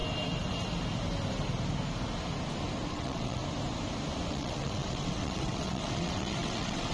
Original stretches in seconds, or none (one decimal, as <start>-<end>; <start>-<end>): 0.0-2.9; 3.4-4.3